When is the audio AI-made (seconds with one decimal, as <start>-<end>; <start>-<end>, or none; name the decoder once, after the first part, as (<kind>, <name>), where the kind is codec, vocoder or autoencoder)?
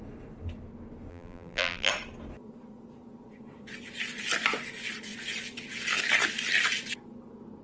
1.1-1.9 (vocoder, BigVGAN v2)